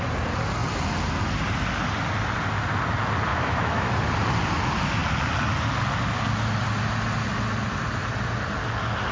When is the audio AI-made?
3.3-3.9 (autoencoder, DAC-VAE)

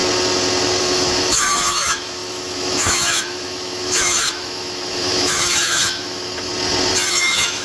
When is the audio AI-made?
0.8-6.5 (autoencoder, DAC-VAE); 7.1-7.6

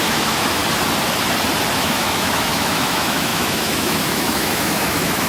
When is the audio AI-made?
0.0-0.6 (autoencoder, DAC-VAE); 1.7-5.3